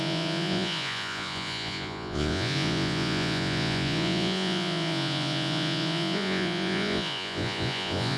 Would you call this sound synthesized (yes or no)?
yes